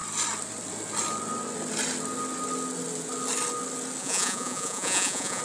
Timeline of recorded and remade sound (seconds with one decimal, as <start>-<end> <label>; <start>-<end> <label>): 0.0-4.0 recorded; 4.0-5.4 remade

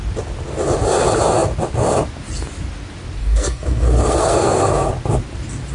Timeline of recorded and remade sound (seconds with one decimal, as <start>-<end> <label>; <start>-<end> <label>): 0.0-3.2 recorded; 3.2-4.9 remade; 4.9-5.7 recorded

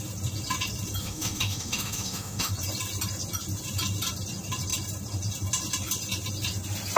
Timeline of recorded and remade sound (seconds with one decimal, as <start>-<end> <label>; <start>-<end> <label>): 0.0-1.0 recorded; 1.0-2.5 remade; 2.5-7.0 recorded

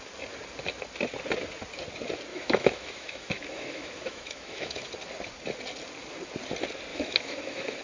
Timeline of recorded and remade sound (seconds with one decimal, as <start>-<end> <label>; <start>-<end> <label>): 0.0-2.3 recorded; 2.3-4.9 remade; 4.9-6.9 recorded; 6.9-7.8 remade